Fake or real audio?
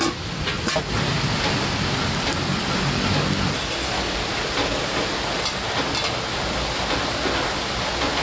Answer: real